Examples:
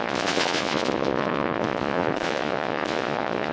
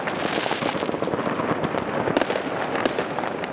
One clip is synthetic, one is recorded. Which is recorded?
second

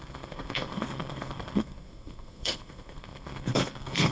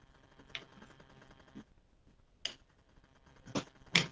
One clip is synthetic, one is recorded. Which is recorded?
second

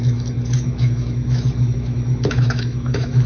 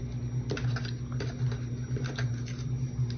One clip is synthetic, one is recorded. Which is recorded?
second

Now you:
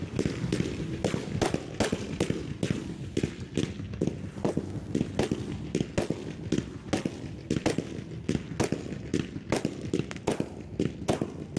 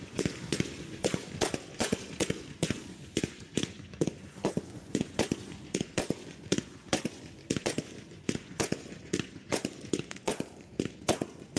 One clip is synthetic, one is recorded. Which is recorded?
first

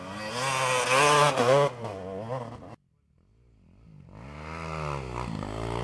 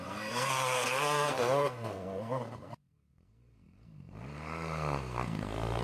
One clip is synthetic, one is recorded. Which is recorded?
first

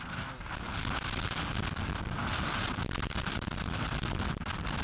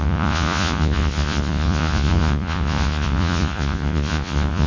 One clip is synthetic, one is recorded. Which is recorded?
first